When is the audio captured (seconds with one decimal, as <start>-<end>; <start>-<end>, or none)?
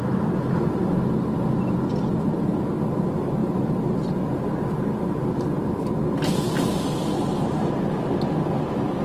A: 0.0-9.0